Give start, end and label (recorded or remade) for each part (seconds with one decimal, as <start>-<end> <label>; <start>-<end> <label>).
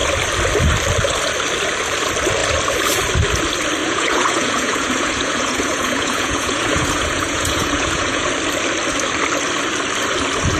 0.0-3.8 recorded; 3.8-8.3 remade; 8.3-10.6 recorded